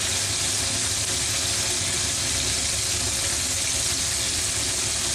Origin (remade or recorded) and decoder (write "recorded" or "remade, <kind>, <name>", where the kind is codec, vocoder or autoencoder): recorded